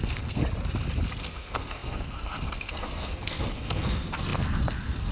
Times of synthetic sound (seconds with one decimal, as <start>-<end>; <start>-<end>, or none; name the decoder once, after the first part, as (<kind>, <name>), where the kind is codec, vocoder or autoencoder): 0.0-0.4 (codec, SNAC); 1.1-5.1